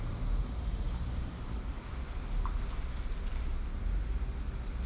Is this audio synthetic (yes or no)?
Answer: no